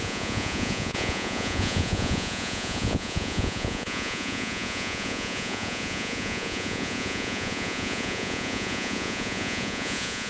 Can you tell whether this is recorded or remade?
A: remade